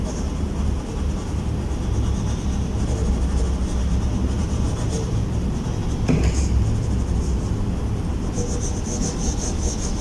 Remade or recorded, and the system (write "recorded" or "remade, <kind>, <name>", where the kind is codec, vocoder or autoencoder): recorded